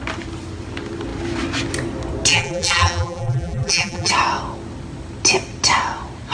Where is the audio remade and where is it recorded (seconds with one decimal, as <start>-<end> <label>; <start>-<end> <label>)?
0.0-2.3 recorded; 2.3-4.1 remade; 4.1-6.3 recorded